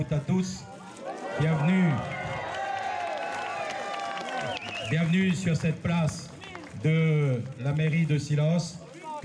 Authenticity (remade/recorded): recorded